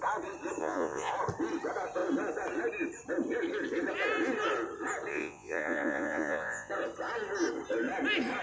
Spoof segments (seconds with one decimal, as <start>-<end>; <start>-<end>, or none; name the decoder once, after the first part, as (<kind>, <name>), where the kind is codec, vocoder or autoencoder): 0.6-1.1 (vocoder, Vocos); 5.1-6.7